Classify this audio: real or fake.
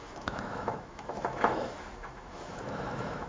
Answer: fake